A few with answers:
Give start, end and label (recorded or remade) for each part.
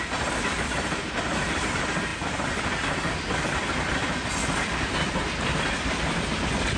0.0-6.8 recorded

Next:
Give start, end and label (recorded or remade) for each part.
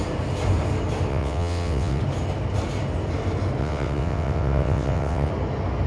0.0-1.1 recorded; 1.1-2.0 remade; 2.0-3.6 recorded; 3.6-5.3 remade; 5.3-5.9 recorded